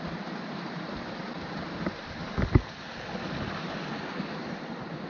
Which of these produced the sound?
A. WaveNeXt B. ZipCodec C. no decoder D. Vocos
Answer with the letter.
C